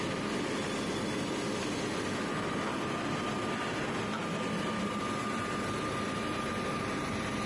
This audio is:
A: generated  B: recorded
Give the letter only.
B